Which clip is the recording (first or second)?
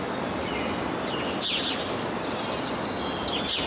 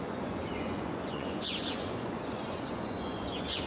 first